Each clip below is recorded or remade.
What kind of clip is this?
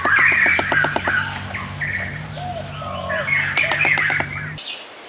recorded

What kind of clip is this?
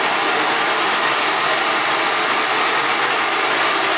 recorded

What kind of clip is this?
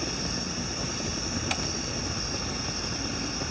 recorded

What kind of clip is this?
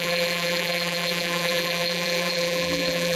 remade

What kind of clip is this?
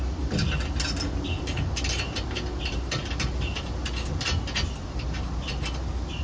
recorded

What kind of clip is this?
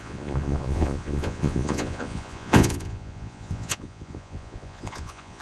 remade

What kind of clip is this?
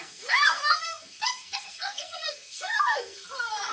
remade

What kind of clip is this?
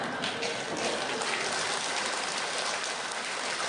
recorded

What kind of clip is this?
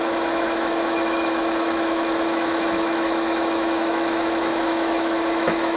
remade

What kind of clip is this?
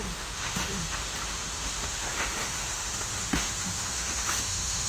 remade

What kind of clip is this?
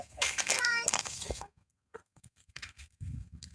remade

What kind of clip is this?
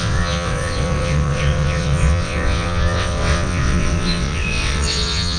remade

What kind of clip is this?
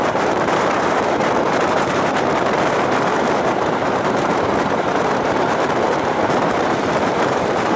remade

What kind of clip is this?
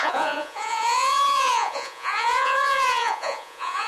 remade